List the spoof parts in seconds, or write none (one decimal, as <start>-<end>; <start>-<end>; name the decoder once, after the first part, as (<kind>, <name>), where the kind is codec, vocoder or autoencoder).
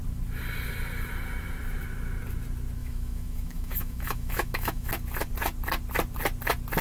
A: 2.8-4.9 (autoencoder, DAC-VAE)